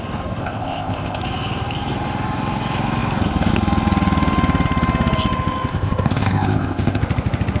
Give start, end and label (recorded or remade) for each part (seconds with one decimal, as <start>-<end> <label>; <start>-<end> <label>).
0.0-0.4 recorded; 0.4-1.2 remade; 1.2-5.7 recorded; 5.7-7.0 remade; 7.0-7.6 recorded